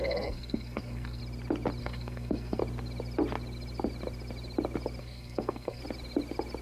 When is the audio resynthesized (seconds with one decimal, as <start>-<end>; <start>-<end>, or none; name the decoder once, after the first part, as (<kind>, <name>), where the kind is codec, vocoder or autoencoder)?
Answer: 0.0-1.2 (codec, SNAC); 1.8-2.6; 5.0-5.8